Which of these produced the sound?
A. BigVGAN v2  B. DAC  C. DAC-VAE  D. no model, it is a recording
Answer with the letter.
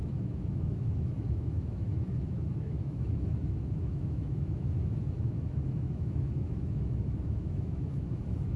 C